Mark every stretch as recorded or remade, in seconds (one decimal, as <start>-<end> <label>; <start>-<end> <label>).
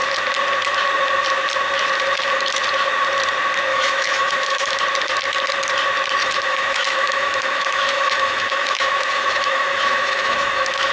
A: 0.0-3.7 recorded; 3.7-4.8 remade; 4.8-6.2 recorded; 6.2-10.9 remade